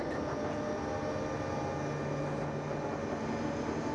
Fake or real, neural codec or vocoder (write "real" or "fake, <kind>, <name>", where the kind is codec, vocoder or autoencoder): real